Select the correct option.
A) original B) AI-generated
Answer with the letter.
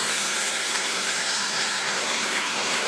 B